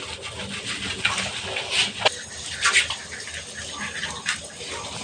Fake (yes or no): no